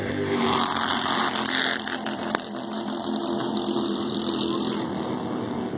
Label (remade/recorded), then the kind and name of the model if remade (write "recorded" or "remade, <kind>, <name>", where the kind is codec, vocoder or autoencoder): remade, vocoder, BigVGAN v2